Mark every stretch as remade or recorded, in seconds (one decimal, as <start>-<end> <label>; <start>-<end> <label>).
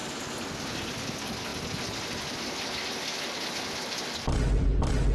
0.0-5.1 recorded